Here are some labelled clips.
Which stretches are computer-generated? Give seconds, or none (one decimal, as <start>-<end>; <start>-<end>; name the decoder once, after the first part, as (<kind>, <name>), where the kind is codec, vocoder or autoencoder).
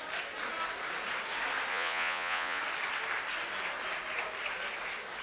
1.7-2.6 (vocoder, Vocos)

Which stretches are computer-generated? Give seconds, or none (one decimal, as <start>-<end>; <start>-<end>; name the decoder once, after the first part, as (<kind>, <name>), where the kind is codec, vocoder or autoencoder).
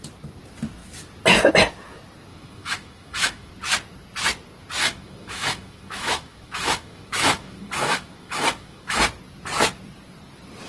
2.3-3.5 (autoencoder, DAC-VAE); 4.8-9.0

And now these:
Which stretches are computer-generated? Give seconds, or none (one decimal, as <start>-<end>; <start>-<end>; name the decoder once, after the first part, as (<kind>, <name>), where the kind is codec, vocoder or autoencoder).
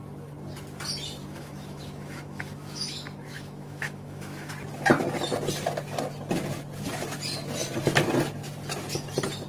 1.2-4.5 (autoencoder, DAC-VAE)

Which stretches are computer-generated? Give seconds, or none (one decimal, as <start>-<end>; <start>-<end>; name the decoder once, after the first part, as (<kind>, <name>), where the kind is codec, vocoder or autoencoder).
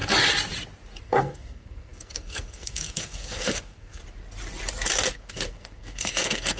1.0-4.0 (codec, SNAC); 5.1-6.6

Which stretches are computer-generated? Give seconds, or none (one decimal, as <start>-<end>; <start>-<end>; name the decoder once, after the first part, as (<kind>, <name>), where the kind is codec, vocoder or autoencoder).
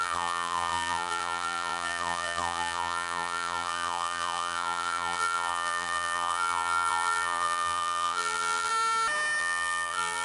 0.0-8.7 (vocoder, BigVGAN v2); 9.4-10.2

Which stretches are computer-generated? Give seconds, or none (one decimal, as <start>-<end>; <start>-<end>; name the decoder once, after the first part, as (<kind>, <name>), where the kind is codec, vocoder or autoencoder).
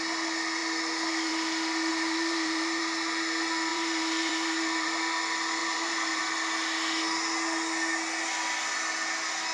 1.9-2.8 (vocoder, BigVGAN v2); 3.7-5.0; 5.6-6.2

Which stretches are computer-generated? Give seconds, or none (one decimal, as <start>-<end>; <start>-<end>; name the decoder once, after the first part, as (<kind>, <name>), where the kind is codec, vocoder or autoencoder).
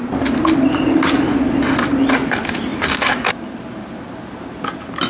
none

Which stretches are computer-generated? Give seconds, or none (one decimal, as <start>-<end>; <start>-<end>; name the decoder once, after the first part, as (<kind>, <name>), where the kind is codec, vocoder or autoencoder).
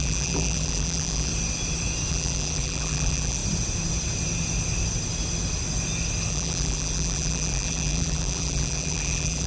0.0-1.3 (vocoder, BigVGAN v2); 2.1-3.4; 6.3-9.5